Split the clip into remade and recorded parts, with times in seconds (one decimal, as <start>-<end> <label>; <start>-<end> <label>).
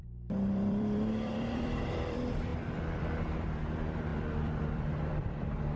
0.0-5.8 remade